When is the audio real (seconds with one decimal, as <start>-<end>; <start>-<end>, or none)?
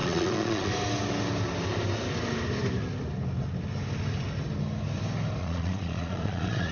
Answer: 0.7-5.4